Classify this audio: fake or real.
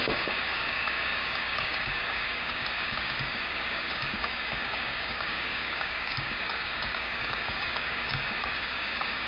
fake